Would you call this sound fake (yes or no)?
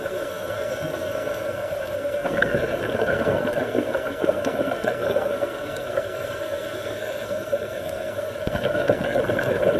yes